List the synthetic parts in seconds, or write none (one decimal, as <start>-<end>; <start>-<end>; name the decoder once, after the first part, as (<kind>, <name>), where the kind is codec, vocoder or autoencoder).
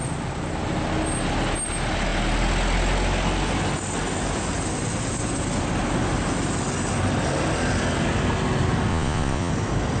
8.9-9.5 (vocoder, Vocos)